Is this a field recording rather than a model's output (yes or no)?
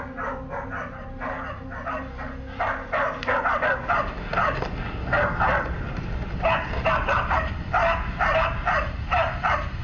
yes